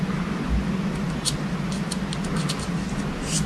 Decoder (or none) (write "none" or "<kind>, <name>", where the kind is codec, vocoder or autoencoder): none